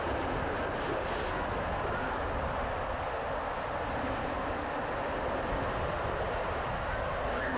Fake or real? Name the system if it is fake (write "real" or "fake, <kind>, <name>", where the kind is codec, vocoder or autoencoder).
real